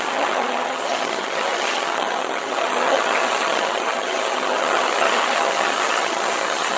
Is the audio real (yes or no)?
no